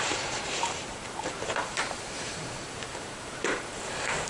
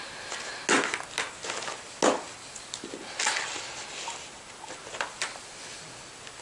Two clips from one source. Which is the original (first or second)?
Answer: second